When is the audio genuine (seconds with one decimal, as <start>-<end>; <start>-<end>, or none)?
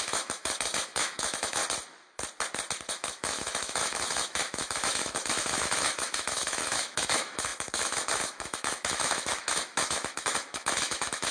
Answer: 1.6-2.9